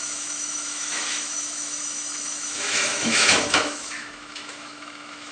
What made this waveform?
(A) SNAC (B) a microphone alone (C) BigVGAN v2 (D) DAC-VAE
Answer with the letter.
D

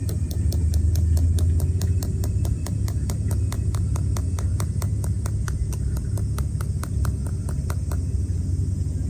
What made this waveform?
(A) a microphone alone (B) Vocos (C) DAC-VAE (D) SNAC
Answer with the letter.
A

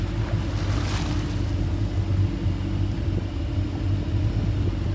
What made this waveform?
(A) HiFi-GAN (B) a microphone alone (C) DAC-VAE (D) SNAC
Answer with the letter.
B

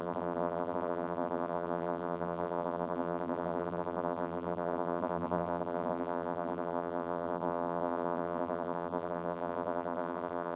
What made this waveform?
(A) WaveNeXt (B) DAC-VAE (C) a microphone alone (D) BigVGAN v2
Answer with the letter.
D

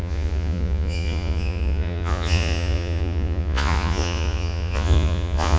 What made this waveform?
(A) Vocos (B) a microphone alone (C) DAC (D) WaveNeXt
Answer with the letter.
A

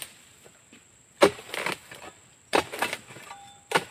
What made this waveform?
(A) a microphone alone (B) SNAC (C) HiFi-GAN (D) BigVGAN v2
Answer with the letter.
D